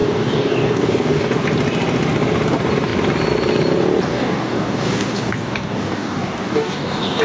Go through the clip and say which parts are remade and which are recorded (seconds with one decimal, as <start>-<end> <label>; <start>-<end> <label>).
0.0-1.4 remade; 1.4-4.1 recorded; 4.1-7.2 remade